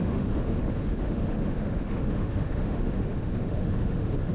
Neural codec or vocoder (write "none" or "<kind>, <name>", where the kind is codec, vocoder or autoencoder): autoencoder, DAC-VAE